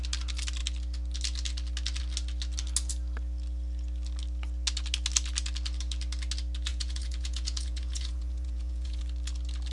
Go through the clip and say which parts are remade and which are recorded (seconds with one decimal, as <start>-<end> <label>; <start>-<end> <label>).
0.0-6.7 recorded; 6.7-9.0 remade; 9.0-9.7 recorded